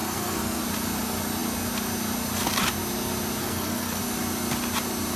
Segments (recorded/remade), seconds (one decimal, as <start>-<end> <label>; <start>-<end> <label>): 0.0-0.6 remade; 0.6-3.4 recorded; 3.4-4.0 remade; 4.0-5.2 recorded